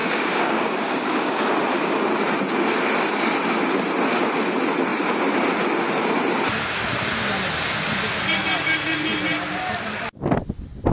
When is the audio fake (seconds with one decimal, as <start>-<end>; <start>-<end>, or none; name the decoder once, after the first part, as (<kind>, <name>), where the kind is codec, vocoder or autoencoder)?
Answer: 0.0-1.5 (codec, DAC)